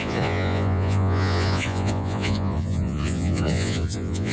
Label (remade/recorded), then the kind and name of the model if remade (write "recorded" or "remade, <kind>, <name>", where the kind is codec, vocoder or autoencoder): remade, vocoder, Vocos